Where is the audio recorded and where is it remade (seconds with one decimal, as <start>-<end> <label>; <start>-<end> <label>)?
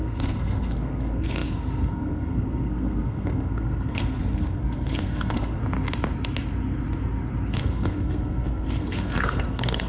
0.0-5.6 remade; 5.6-7.5 recorded; 7.5-9.9 remade